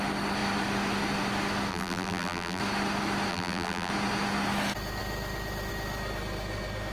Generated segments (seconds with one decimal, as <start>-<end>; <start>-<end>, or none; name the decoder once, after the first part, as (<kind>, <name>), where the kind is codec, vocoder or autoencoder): 1.7-2.6 (vocoder, BigVGAN v2); 3.3-3.9